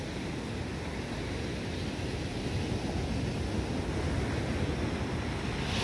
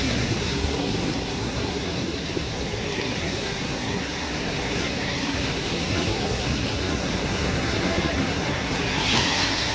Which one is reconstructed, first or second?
second